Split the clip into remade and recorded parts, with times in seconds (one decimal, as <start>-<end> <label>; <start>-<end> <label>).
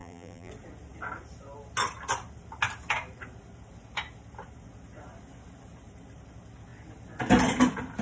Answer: 0.0-0.5 remade; 0.5-8.0 recorded